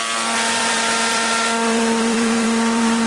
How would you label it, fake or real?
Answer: fake